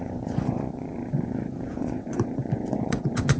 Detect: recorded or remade remade